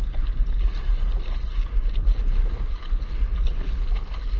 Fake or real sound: real